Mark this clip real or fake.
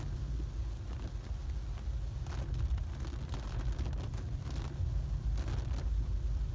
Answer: real